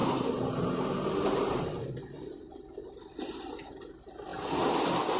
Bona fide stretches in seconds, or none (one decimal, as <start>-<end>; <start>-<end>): 0.0-1.1; 4.3-5.2